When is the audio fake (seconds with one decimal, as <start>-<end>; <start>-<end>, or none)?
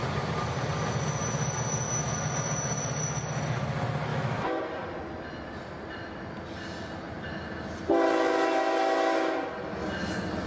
4.1-4.6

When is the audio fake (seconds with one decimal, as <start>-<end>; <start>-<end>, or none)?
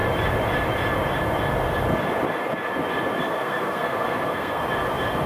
3.2-4.6